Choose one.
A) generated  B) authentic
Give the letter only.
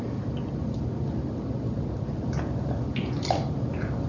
B